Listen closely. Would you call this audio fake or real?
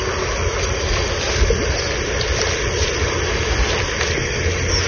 real